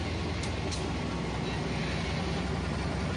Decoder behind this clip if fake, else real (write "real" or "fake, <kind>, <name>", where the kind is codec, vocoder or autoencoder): real